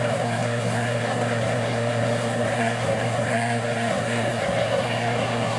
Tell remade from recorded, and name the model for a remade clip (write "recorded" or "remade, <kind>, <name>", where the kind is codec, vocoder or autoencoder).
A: remade, codec, SNAC